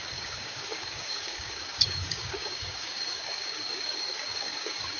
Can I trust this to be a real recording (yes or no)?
no